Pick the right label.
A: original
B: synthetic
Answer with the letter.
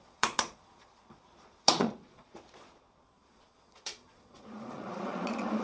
B